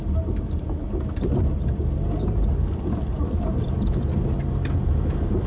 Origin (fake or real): real